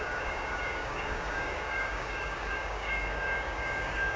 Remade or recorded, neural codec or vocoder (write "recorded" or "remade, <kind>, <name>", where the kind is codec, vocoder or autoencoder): remade, codec, DAC